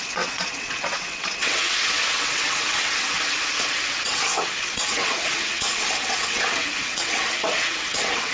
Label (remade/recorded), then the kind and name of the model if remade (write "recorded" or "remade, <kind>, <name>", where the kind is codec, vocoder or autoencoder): remade, vocoder, WaveNeXt